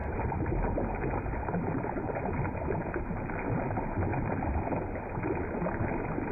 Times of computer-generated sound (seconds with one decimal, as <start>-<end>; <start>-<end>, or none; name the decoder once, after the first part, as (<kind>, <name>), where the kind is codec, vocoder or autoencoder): none